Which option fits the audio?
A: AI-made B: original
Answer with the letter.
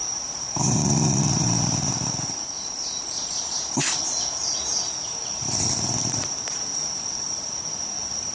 A